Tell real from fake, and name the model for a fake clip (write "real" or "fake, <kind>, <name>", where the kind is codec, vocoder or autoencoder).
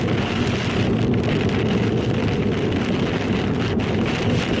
real